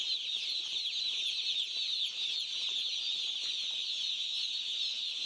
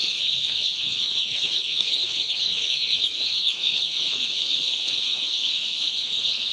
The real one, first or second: first